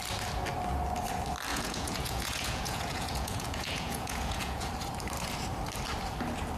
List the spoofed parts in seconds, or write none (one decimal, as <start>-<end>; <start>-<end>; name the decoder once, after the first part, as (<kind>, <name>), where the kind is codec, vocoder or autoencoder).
1.5-4.7 (vocoder, Vocos)